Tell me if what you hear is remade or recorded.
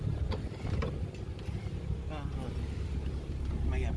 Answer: recorded